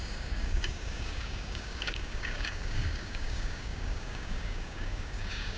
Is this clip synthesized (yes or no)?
yes